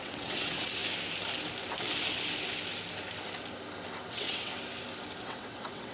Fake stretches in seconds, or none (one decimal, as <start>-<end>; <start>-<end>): 0.0-0.8; 4.1-4.5; 5.2-5.9